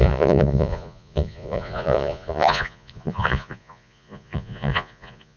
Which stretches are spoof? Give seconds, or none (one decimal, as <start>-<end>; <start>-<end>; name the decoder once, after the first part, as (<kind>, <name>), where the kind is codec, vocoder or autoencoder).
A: 0.0-5.4 (vocoder, Vocos)